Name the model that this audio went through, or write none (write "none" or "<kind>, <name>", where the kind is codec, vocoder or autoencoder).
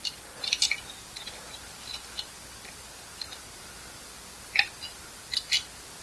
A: vocoder, BigVGAN v2